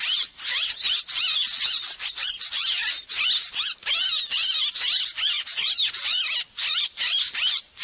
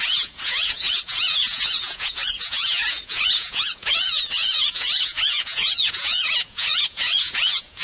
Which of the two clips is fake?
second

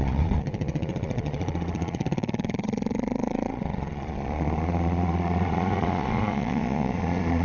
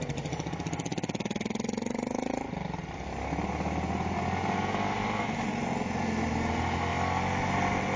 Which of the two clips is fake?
first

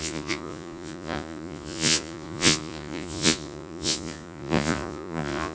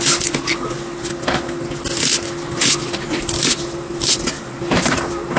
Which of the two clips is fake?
first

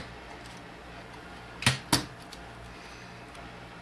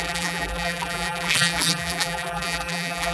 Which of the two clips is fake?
second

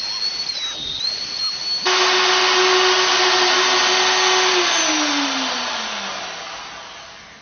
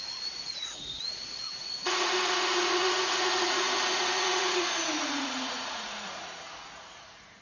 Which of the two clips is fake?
second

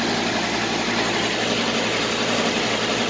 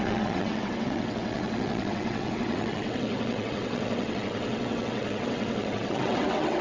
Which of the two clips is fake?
second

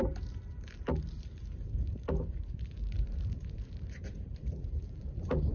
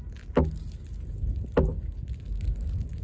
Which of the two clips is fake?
first